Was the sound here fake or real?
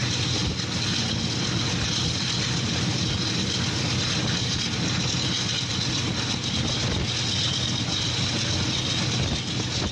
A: real